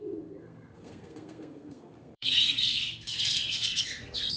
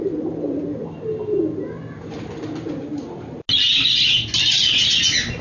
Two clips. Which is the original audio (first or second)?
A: second